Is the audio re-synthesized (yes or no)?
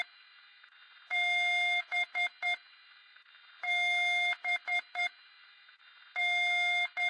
no